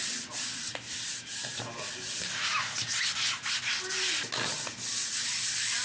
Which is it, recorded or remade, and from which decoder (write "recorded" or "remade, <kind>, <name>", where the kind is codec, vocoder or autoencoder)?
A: recorded